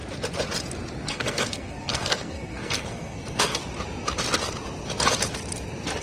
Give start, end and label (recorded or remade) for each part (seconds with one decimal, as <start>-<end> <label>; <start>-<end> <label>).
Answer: 0.0-1.1 recorded; 1.1-3.6 remade; 3.6-6.0 recorded